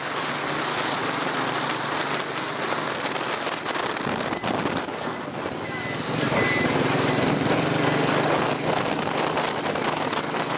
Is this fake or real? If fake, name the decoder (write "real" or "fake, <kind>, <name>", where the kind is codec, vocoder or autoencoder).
real